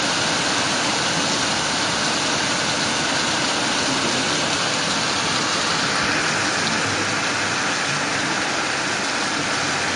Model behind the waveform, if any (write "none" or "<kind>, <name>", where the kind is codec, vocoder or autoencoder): none